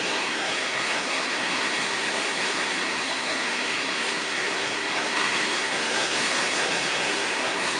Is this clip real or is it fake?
fake